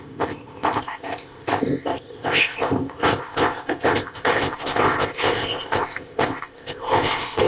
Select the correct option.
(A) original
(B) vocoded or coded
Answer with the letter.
B